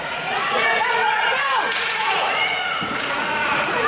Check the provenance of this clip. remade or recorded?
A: remade